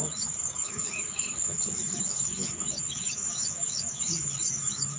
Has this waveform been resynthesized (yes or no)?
yes